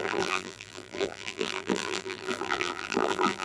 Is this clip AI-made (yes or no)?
yes